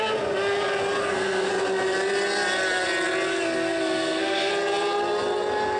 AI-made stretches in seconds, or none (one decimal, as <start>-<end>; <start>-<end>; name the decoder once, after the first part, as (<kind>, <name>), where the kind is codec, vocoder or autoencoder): 1.0-1.5 (codec, SNAC); 3.3-4.5